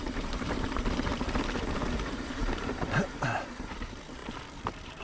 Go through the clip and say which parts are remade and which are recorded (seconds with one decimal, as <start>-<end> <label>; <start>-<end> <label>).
0.0-1.1 remade; 1.1-1.8 recorded; 1.8-5.0 remade